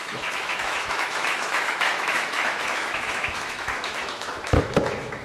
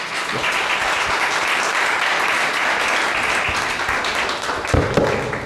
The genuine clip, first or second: second